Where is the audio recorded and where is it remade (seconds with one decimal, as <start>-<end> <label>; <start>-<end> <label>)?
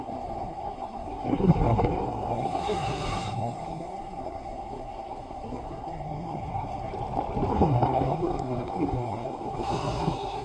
0.0-6.9 remade; 6.9-7.5 recorded; 7.5-10.4 remade